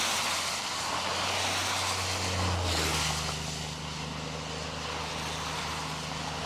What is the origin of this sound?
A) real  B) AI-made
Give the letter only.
A